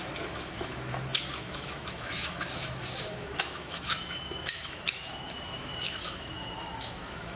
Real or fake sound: fake